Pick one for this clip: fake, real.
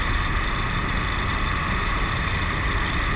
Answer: real